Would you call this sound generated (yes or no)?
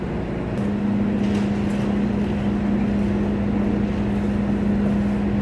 no